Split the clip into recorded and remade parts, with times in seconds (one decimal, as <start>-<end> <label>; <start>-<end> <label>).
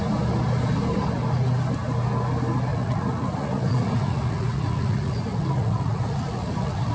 0.0-2.7 recorded; 2.7-6.9 remade